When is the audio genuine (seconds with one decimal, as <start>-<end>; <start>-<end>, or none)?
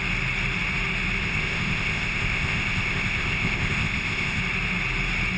0.0-1.2; 4.4-5.4